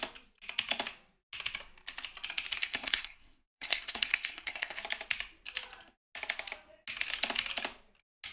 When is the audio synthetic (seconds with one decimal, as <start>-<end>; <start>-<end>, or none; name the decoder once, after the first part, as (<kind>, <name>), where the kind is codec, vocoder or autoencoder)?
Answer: 2.6-4.8 (codec, SNAC)